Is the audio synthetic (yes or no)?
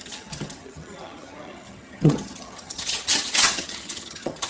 yes